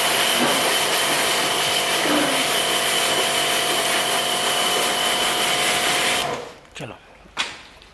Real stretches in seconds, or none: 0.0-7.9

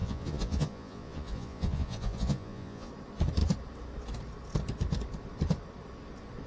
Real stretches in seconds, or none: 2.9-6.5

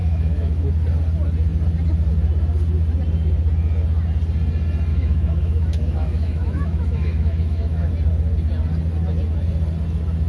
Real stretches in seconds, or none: 0.7-4.9; 7.9-10.3